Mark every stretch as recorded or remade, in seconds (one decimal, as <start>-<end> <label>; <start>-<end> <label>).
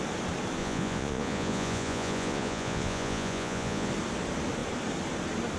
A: 0.0-0.6 recorded; 0.6-3.9 remade; 3.9-5.6 recorded